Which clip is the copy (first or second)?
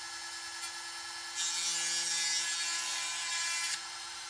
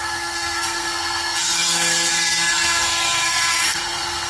second